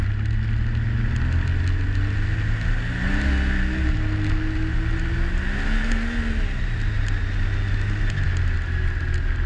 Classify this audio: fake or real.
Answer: real